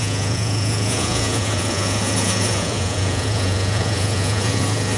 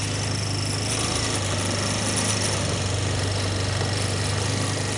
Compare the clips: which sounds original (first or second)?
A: second